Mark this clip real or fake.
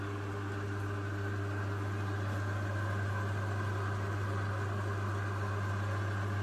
real